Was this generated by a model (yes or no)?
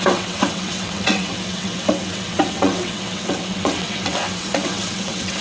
yes